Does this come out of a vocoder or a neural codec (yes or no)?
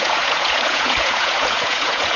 yes